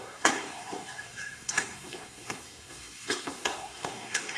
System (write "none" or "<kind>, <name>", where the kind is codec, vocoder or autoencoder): codec, SNAC